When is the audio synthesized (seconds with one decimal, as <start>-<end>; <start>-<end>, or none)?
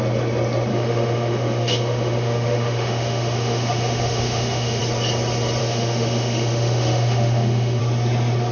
0.7-4.8; 5.6-7.8